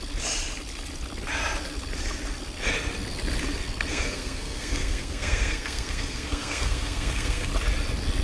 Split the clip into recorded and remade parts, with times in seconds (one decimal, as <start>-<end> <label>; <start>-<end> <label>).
0.0-3.9 recorded; 3.9-7.5 remade; 7.5-8.2 recorded